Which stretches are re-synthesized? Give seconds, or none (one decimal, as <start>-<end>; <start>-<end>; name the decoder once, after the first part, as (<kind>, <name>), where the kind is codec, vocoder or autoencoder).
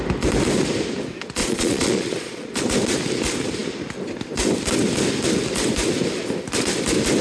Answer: 1.4-2.6 (vocoder, Vocos)